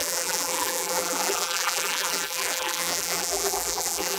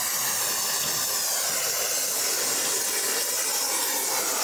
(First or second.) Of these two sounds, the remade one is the first